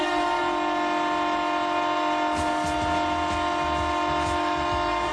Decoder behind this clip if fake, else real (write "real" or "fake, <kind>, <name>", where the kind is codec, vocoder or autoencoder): real